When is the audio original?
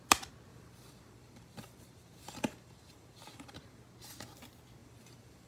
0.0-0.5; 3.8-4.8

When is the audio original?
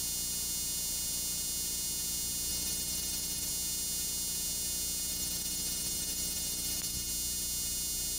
0.0-2.5; 3.5-5.1; 7.1-8.2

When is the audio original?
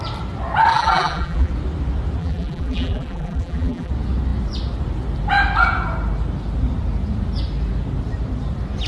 0.0-0.7; 1.5-2.2; 3.9-8.9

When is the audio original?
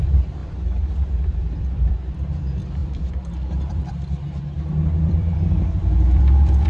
none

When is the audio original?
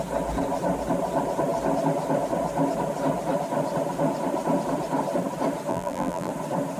0.0-5.7; 6.3-6.8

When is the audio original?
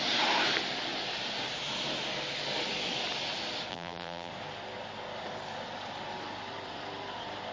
0.0-3.7; 4.3-7.5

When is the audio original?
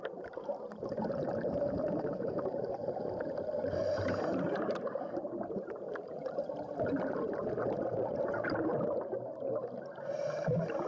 none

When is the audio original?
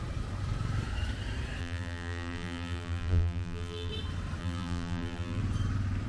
0.0-1.6; 3.9-4.4; 5.4-6.1